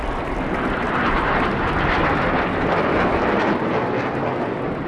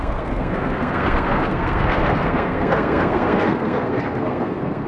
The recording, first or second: first